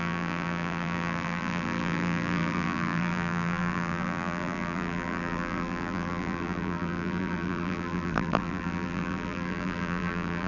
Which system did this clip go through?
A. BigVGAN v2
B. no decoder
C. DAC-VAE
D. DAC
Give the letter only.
A